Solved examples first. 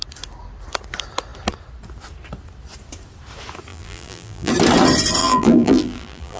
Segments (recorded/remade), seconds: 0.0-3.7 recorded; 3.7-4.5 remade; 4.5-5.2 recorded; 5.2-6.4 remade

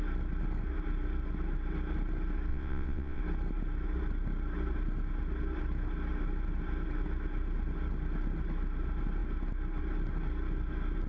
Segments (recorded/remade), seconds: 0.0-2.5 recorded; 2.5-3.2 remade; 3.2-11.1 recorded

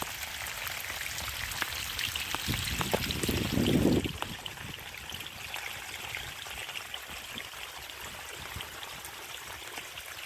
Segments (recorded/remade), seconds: 0.0-10.3 recorded